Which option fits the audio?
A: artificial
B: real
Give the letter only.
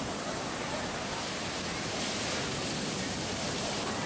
B